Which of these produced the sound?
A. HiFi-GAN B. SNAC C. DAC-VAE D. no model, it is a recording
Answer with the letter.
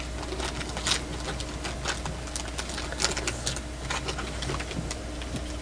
D